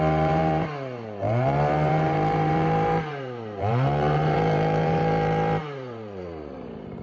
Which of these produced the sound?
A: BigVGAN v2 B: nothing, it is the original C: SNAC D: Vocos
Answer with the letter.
A